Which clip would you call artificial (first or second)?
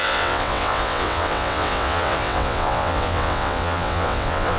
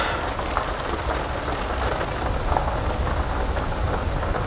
first